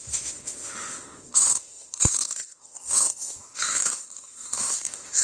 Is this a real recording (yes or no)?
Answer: no